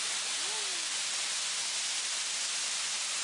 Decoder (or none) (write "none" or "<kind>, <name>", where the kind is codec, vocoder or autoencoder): none